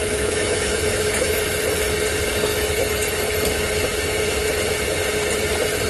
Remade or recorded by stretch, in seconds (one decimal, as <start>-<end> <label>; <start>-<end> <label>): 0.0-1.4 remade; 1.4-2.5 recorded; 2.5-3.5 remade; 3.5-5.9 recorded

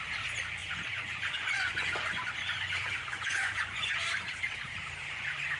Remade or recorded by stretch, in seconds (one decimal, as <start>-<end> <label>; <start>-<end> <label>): 0.0-0.6 recorded; 0.6-4.0 remade; 4.0-5.6 recorded

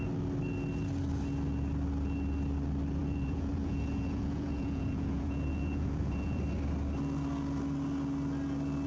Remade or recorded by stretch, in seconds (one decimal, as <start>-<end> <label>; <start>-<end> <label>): 0.0-3.0 recorded; 3.0-6.4 remade; 6.4-8.9 recorded